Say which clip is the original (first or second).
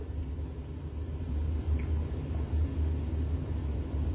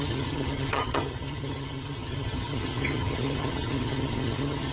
first